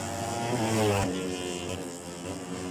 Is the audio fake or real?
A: real